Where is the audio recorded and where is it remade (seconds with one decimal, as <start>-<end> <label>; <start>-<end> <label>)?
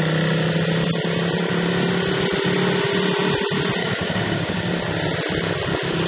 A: 0.0-3.8 recorded; 3.8-4.7 remade; 4.7-6.1 recorded